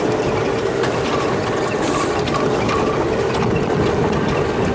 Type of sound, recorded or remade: recorded